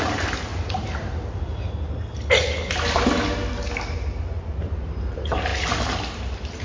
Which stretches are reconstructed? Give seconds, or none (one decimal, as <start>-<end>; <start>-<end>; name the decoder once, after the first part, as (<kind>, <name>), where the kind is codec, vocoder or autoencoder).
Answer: 0.0-0.5 (vocoder, BigVGAN v2); 4.5-5.5; 6.1-6.6